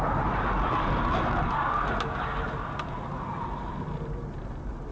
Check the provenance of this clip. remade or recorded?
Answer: recorded